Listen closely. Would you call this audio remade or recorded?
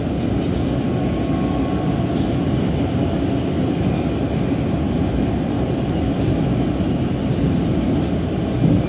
recorded